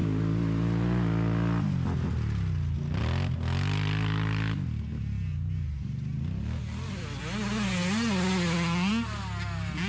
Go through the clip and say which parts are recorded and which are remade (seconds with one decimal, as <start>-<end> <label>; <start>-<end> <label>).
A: 0.0-9.9 recorded